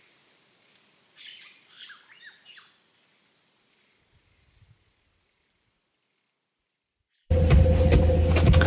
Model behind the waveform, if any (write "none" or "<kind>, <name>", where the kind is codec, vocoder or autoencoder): none